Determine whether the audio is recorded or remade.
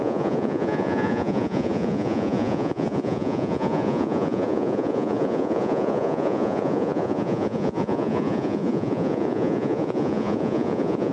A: remade